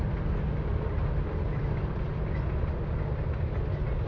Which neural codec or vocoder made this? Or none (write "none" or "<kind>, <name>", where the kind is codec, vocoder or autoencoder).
none